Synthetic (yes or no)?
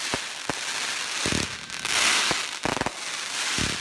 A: no